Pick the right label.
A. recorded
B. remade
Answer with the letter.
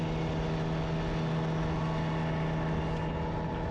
A